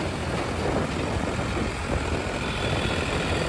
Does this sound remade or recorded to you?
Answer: recorded